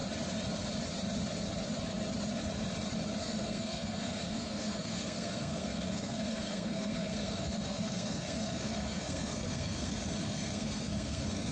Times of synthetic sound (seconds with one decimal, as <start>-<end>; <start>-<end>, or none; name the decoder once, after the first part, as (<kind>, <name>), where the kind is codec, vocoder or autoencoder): 3.2-11.5 (codec, SNAC)